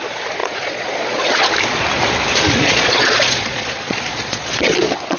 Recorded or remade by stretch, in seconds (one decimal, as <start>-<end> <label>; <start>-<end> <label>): 0.0-0.4 recorded; 0.4-1.5 remade; 1.5-2.6 recorded; 2.6-5.2 remade